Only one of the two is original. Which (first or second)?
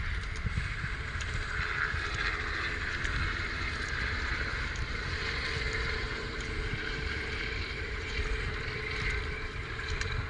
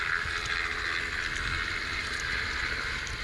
second